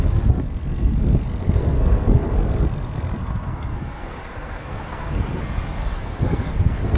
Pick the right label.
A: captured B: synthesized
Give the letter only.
B